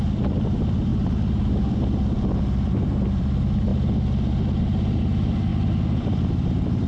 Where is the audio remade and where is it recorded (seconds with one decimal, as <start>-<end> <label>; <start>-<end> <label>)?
0.0-3.7 remade; 3.7-5.0 recorded; 5.0-6.9 remade